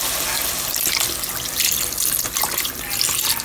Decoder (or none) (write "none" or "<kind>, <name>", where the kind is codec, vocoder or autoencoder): none